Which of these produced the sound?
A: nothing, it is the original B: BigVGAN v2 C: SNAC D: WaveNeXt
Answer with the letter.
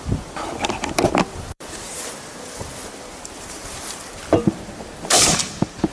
B